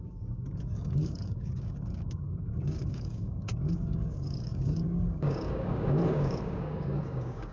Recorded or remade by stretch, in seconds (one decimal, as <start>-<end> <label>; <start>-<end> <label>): 0.0-7.5 remade

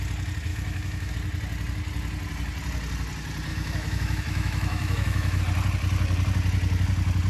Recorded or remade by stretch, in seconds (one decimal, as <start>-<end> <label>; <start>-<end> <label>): 0.0-0.5 recorded; 0.5-1.1 remade; 1.1-3.5 recorded; 3.5-5.4 remade; 5.4-7.3 recorded

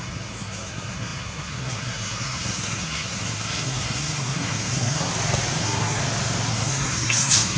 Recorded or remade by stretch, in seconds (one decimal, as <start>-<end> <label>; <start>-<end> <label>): 0.0-5.1 remade; 5.1-5.6 recorded; 5.6-6.0 remade; 6.0-6.5 recorded; 6.5-7.6 remade

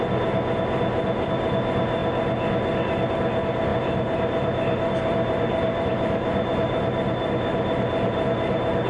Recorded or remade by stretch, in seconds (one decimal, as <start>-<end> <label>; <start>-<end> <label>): 0.0-3.7 recorded; 3.7-8.9 remade

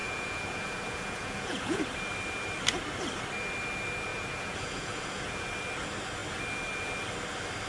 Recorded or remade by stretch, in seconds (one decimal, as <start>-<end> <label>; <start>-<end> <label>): 0.0-1.8 remade; 1.8-4.1 recorded; 4.1-5.5 remade; 5.5-7.7 recorded

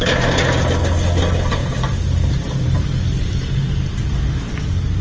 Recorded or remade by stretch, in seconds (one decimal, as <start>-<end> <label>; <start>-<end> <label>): 0.0-1.6 recorded; 1.6-4.6 remade; 4.6-5.0 recorded